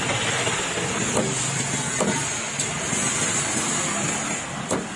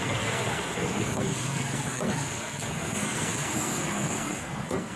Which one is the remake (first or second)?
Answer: second